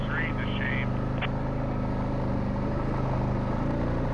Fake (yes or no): no